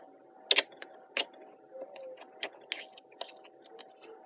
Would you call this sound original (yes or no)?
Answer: yes